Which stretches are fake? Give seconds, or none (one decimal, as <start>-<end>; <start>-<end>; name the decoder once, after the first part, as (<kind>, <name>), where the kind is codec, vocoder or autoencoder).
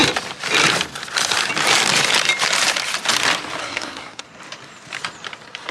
3.6-4.2 (codec, SNAC)